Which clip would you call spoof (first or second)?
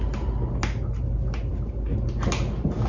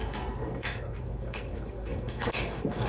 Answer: second